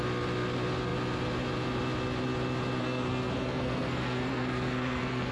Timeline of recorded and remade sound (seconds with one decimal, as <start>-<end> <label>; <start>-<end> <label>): 0.0-2.8 recorded; 2.8-5.3 remade